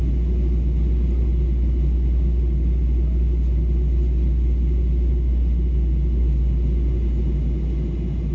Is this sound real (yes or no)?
yes